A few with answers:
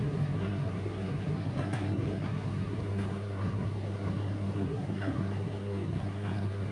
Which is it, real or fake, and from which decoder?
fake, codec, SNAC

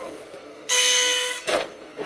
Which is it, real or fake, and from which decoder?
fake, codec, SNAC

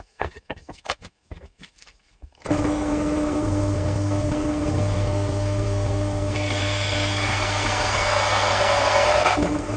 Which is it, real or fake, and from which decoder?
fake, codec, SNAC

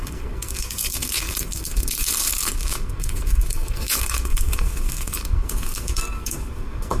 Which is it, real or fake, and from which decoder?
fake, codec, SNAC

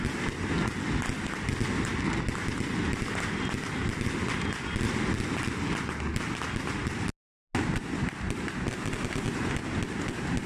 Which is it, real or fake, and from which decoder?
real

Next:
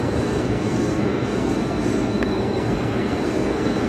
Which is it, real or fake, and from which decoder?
fake, codec, SNAC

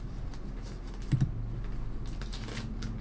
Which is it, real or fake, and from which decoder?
real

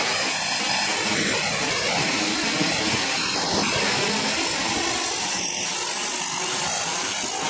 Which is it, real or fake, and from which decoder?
real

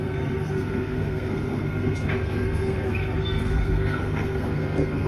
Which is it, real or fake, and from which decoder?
fake, codec, SNAC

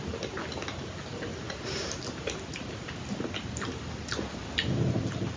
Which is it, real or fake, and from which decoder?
real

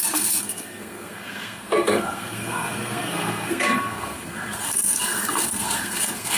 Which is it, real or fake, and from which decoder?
fake, codec, SNAC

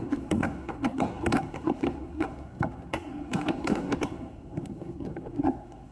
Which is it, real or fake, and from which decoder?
fake, codec, SNAC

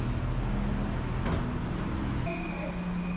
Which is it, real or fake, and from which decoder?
real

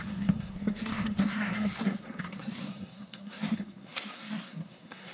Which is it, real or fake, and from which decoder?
fake, codec, SNAC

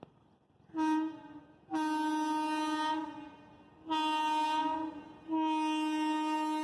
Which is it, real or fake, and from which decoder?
real